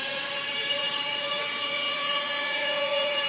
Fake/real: fake